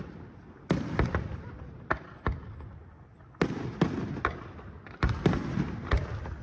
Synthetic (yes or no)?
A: yes